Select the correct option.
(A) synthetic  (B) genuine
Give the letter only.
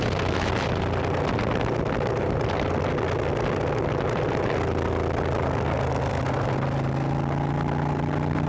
B